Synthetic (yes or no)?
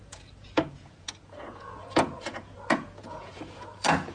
yes